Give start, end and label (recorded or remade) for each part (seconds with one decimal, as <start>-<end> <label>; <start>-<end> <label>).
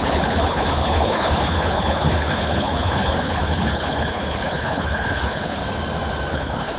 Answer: 0.0-5.6 remade; 5.6-6.3 recorded; 6.3-6.8 remade